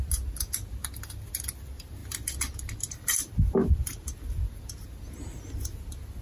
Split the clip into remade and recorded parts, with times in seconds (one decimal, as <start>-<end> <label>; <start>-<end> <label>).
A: 0.0-6.2 recorded